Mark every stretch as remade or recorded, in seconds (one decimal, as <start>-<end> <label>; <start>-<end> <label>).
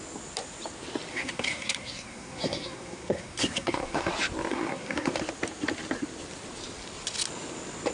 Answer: 0.0-1.1 recorded; 1.1-4.1 remade; 4.1-4.5 recorded; 4.5-5.1 remade; 5.1-7.9 recorded